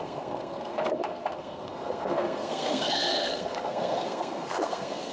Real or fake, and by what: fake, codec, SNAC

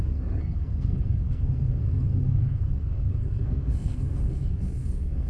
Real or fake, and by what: fake, codec, SNAC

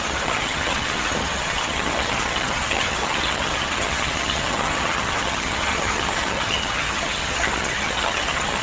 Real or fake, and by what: fake, vocoder, HiFi-GAN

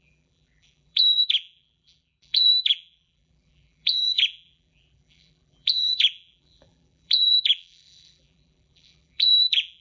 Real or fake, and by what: fake, vocoder, BigVGAN v2